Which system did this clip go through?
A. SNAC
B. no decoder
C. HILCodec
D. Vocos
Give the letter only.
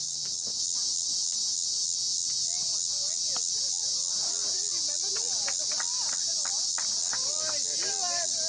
B